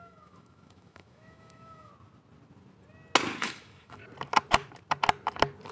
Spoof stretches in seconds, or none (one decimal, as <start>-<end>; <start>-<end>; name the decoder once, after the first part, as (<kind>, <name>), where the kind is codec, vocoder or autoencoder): 0.0-1.9 (autoencoder, DAC-VAE); 3.4-4.0